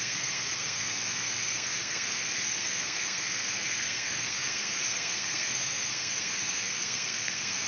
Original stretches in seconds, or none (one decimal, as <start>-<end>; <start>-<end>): none